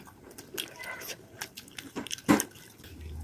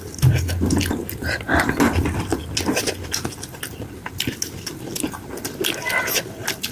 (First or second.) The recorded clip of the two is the second